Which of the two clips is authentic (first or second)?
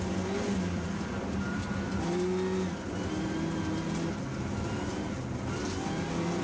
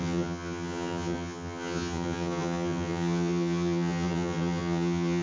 first